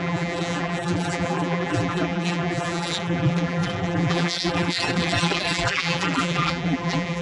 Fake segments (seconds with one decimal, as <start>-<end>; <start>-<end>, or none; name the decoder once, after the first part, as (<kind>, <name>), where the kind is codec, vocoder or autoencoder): 0.0-7.2 (vocoder, BigVGAN v2)